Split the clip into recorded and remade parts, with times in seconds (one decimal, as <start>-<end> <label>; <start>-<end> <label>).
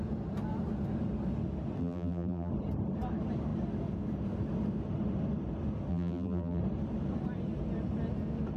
0.0-1.8 recorded; 1.8-2.5 remade; 2.5-5.9 recorded; 5.9-6.6 remade; 6.6-8.6 recorded